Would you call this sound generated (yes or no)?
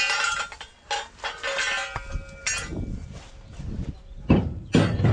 no